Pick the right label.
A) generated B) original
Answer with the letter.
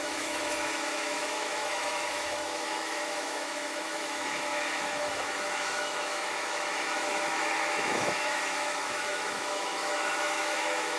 A